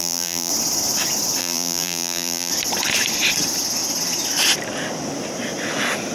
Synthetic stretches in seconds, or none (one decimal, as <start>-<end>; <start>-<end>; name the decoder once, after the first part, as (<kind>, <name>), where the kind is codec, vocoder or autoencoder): 0.0-0.5 (vocoder, BigVGAN v2); 1.4-2.5